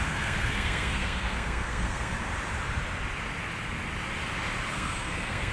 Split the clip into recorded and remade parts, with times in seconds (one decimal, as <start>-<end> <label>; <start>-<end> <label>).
0.0-2.1 remade; 2.1-4.7 recorded; 4.7-5.5 remade